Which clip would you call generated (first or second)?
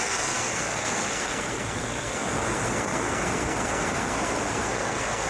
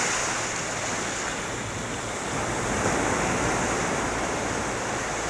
first